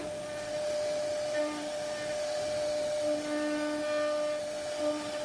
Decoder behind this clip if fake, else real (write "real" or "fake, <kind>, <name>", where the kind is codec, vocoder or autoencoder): real